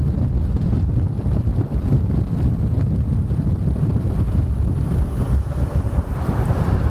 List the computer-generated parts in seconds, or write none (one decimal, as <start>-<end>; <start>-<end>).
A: none